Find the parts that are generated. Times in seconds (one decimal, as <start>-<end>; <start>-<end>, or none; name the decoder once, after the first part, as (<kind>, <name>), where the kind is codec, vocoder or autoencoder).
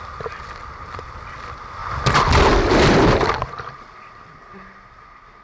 1.8-5.0 (vocoder, BigVGAN v2)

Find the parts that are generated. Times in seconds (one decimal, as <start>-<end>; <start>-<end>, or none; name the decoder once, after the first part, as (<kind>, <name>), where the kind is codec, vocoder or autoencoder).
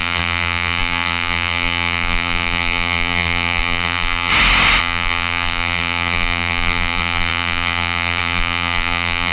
0.0-4.3 (vocoder, BigVGAN v2); 4.8-9.3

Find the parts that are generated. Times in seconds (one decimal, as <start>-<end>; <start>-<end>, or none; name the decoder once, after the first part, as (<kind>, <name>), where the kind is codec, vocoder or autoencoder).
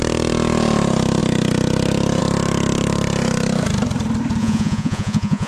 4.4-5.5 (vocoder, Vocos)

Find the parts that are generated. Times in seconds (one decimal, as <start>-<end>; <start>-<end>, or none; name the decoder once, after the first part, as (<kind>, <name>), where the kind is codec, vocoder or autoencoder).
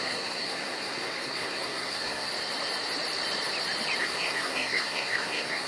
0.0-2.3 (codec, SNAC); 4.0-5.7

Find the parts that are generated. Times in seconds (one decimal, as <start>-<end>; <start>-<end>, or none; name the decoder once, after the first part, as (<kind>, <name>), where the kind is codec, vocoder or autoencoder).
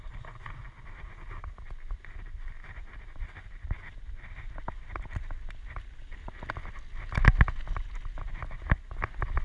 none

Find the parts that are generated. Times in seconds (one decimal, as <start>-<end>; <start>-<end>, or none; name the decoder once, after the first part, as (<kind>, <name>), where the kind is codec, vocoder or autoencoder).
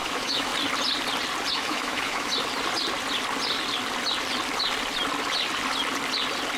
0.0-0.5 (autoencoder, DAC-VAE); 1.5-2.3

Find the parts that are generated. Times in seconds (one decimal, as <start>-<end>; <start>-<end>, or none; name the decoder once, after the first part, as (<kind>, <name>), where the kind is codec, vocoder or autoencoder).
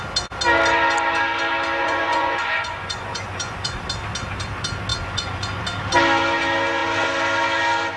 1.8-3.8 (vocoder, Vocos); 4.9-5.6